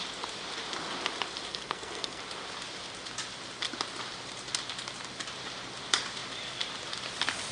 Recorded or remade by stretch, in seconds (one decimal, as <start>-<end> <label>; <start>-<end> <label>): 0.0-1.5 recorded; 1.5-2.2 remade; 2.2-7.5 recorded